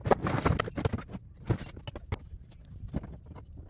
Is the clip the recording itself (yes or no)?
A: yes